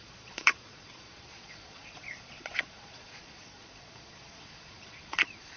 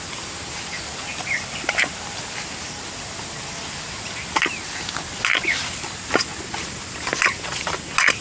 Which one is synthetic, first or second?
first